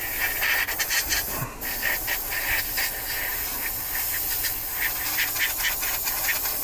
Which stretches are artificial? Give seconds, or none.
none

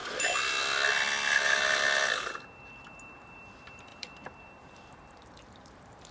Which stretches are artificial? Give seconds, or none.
2.9-6.1 (vocoder, BigVGAN v2)